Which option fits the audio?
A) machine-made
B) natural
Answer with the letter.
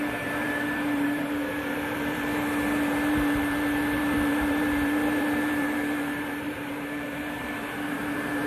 A